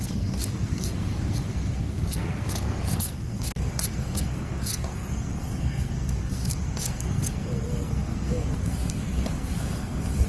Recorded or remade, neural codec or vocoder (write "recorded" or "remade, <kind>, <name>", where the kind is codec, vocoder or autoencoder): remade, codec, SNAC